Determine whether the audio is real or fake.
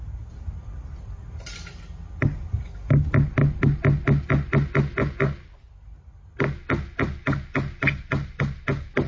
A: real